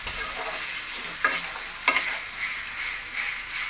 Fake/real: real